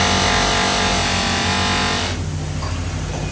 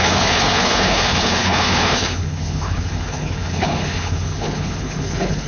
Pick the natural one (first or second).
first